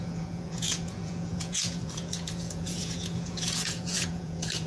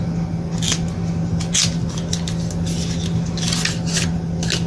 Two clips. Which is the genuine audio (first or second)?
second